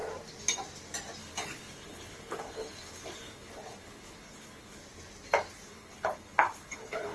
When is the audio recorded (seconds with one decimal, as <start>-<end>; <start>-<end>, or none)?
0.0-1.2; 4.8-5.7

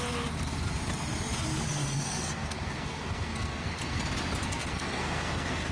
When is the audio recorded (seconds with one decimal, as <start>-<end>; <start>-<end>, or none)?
0.0-1.6; 4.0-4.4